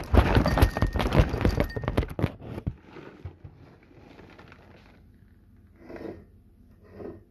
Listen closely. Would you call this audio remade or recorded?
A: recorded